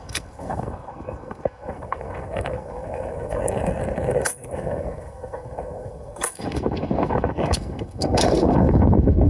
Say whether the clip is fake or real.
fake